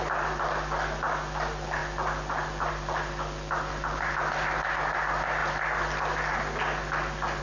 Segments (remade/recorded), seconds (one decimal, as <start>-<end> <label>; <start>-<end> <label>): 0.0-7.4 recorded